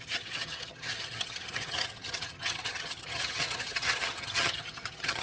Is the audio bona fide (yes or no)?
no